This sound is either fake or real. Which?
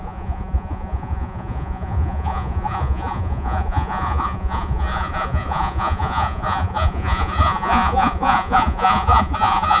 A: fake